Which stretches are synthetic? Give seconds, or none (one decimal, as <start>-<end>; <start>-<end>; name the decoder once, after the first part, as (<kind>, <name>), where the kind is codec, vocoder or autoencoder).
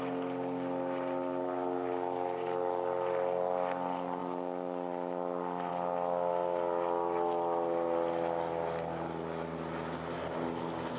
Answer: none